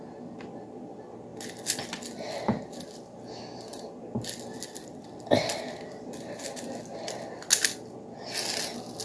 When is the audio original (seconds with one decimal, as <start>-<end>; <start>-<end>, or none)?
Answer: 0.0-9.0